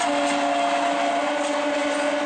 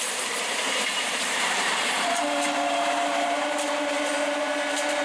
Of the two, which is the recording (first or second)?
first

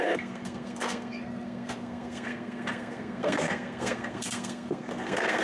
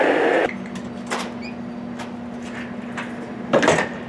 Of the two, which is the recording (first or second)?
second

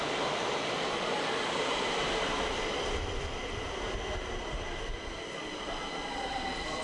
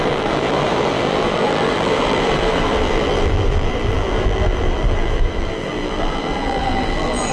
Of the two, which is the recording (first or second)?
first